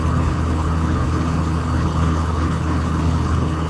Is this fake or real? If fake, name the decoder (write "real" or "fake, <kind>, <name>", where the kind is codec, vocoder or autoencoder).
fake, codec, HILCodec